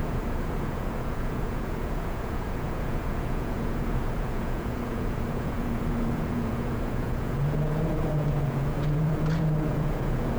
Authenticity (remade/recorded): remade